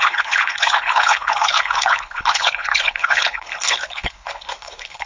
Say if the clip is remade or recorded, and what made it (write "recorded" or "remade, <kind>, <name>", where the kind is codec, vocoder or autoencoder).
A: remade, codec, HILCodec